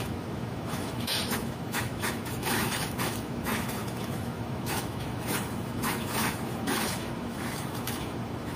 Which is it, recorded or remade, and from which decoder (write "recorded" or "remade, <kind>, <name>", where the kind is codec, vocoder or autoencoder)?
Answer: remade, autoencoder, DAC-VAE